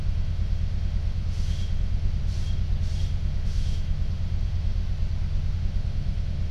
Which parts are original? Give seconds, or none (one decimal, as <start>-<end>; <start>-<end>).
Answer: 2.2-3.0; 4.8-5.6